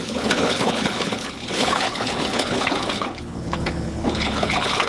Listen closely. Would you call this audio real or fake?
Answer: fake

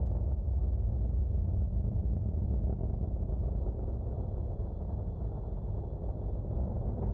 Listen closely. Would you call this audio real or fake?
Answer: real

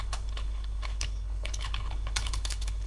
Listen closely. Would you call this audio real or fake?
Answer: fake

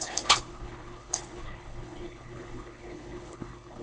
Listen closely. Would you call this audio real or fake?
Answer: fake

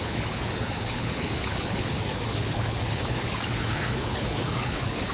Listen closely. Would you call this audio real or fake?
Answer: fake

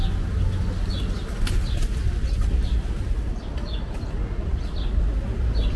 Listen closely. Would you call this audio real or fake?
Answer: real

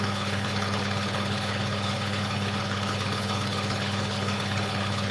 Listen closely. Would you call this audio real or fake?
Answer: fake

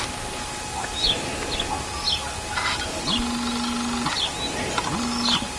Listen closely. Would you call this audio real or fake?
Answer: real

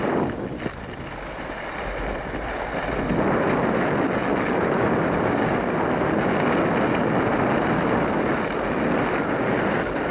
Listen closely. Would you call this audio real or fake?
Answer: real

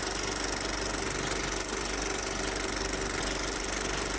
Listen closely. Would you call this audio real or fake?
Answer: real